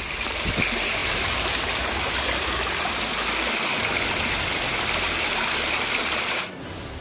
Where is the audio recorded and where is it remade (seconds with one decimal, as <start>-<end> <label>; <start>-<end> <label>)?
0.0-7.0 recorded